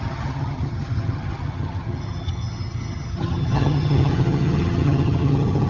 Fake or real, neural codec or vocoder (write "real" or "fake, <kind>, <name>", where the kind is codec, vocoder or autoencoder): fake, vocoder, HiFi-GAN